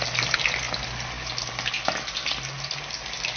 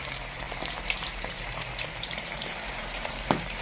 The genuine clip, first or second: first